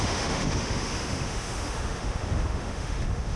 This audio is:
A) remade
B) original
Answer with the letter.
A